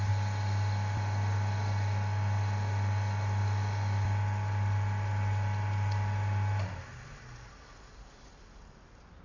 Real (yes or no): yes